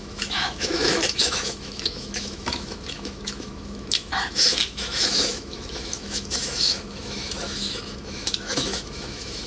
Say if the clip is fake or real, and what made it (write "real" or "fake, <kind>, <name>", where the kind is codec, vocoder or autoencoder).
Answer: fake, autoencoder, DAC-VAE